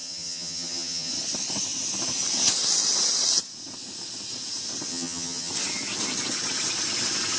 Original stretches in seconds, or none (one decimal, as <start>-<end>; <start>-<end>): 1.1-4.9; 5.5-7.4